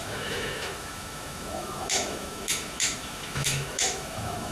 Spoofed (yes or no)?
yes